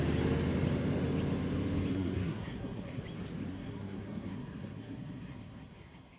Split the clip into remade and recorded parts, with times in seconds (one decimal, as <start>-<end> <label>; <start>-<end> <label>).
0.0-1.9 recorded; 1.9-3.0 remade; 3.0-3.5 recorded; 3.5-6.2 remade